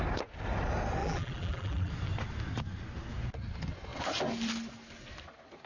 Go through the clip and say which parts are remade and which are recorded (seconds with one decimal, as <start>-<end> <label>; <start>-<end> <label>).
0.0-1.0 recorded; 1.0-1.9 remade; 1.9-5.7 recorded